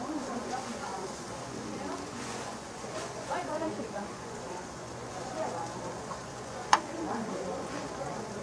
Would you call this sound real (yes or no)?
no